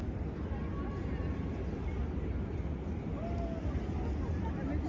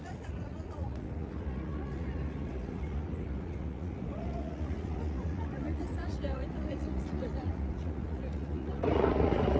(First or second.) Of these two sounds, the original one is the first